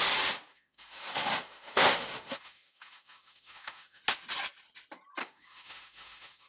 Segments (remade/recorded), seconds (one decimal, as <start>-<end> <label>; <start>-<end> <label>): 0.0-0.5 recorded; 0.5-4.0 remade; 4.0-5.2 recorded; 5.2-6.5 remade